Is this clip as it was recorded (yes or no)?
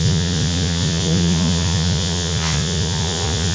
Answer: no